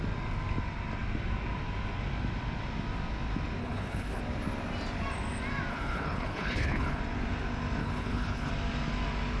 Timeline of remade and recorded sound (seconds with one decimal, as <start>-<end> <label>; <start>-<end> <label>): 0.0-3.6 recorded; 3.6-4.2 remade; 4.2-5.7 recorded; 5.7-7.0 remade; 7.0-7.8 recorded; 7.8-8.5 remade; 8.5-9.4 recorded